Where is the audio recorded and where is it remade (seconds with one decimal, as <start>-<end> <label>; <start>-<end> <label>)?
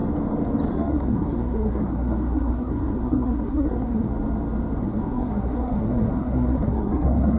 0.0-0.7 recorded; 0.7-4.1 remade; 4.1-4.8 recorded; 4.8-7.4 remade